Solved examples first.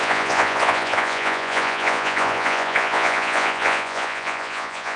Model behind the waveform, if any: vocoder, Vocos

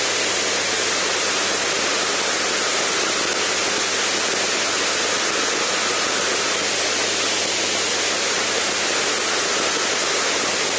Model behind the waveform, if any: none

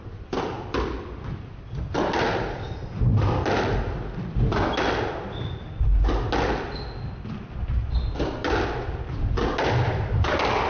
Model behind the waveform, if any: none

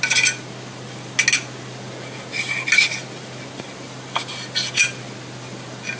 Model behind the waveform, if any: none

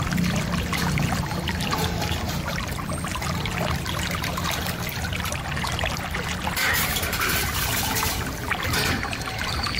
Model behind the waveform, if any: none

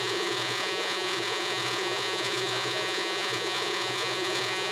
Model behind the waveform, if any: vocoder, Vocos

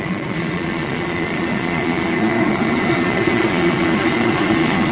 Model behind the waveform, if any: vocoder, Vocos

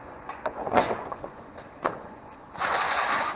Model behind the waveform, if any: vocoder, Vocos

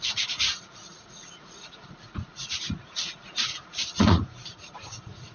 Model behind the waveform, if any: vocoder, Vocos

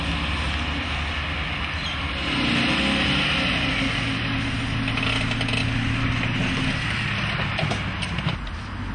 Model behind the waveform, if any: none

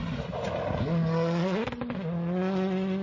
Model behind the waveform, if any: none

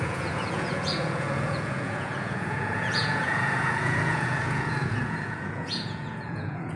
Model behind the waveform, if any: vocoder, Vocos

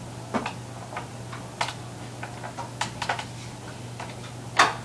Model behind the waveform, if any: none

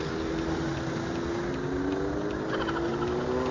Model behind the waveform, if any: none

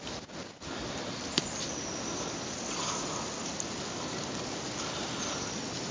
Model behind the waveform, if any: none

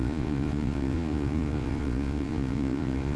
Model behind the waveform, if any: vocoder, Vocos